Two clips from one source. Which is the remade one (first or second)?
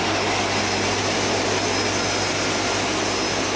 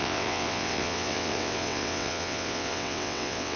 second